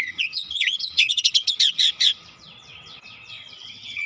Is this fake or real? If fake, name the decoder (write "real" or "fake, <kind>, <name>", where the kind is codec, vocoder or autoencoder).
fake, vocoder, WaveNeXt